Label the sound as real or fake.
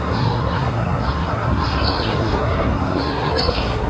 fake